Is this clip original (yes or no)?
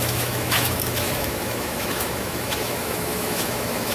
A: no